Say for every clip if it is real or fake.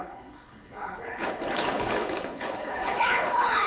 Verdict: fake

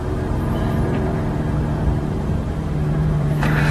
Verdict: fake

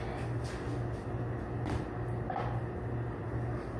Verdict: real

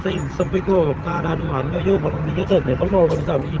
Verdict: fake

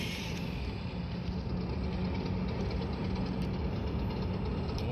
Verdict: real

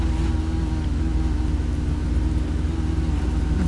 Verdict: real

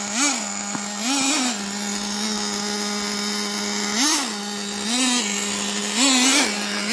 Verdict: real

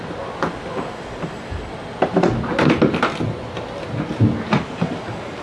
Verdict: real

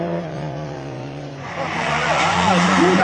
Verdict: fake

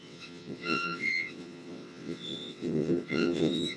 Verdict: fake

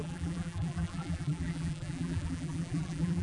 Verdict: fake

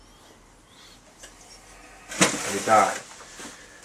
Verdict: real